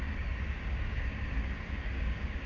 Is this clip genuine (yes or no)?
no